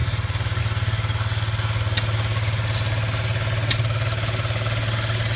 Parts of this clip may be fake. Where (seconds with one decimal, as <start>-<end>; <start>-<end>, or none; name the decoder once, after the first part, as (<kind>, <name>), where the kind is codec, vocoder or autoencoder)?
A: none